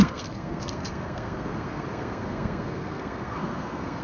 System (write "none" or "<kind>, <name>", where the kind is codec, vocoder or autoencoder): codec, SNAC